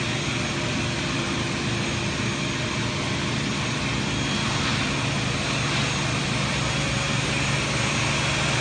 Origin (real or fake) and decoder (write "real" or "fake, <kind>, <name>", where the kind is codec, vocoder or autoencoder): real